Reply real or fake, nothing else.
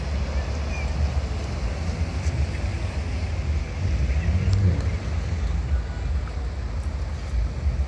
real